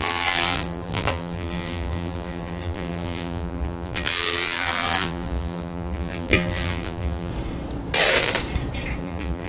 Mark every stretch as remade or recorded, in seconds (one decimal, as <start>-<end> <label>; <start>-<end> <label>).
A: 0.0-7.3 remade; 7.3-9.0 recorded; 9.0-9.5 remade